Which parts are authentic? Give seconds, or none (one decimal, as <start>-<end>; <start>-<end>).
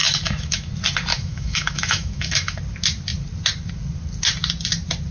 0.7-1.1; 2.6-5.1